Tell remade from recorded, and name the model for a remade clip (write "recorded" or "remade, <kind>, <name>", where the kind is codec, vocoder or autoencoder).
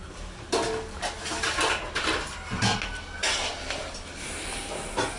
recorded